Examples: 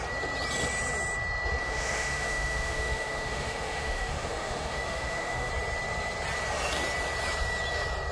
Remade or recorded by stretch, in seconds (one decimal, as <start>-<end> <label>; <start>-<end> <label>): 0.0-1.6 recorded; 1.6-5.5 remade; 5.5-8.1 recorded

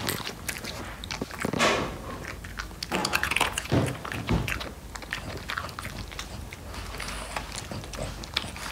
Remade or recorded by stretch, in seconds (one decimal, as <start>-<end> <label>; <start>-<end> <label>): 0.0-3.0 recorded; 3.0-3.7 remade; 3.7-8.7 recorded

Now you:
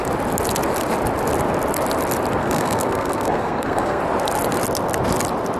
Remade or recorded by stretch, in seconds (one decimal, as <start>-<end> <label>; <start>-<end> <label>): 0.0-2.4 recorded; 2.4-4.0 remade; 4.0-5.6 recorded

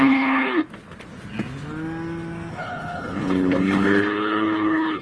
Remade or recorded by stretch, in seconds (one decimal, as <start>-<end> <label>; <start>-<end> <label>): 0.0-0.6 remade; 0.6-2.5 recorded; 2.5-5.0 remade

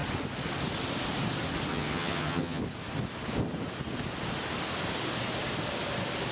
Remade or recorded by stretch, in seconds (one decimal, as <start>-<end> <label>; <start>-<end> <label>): 0.0-1.7 recorded; 1.7-2.6 remade; 2.6-6.3 recorded

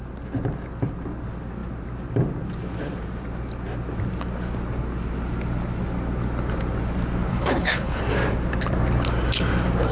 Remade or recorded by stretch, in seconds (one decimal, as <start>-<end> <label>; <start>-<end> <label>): 0.0-7.3 recorded; 7.3-8.0 remade; 8.0-9.9 recorded

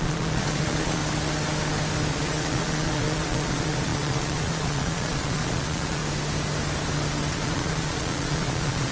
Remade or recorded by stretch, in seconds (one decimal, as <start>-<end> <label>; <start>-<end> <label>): 0.0-1.0 remade; 1.0-2.1 recorded; 2.1-6.0 remade; 6.0-7.3 recorded; 7.3-8.9 remade

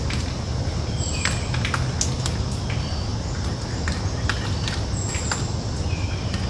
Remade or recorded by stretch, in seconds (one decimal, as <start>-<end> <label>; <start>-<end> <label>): 0.0-6.5 recorded